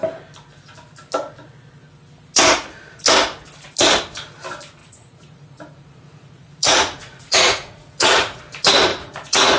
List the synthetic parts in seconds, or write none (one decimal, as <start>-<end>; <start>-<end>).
4.8-8.4; 8.9-9.6